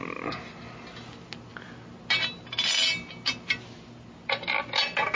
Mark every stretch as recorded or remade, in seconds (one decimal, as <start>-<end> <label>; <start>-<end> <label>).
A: 0.0-5.1 recorded